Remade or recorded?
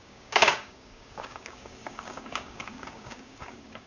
remade